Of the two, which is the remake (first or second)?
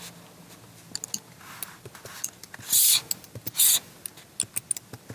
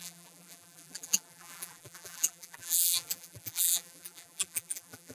second